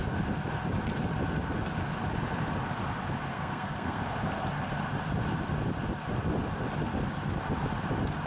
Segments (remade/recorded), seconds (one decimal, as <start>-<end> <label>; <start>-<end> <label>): 0.0-3.3 recorded; 3.3-4.0 remade; 4.0-8.3 recorded